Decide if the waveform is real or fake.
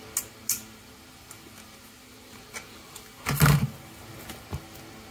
real